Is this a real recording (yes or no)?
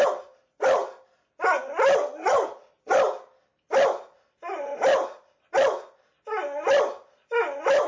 yes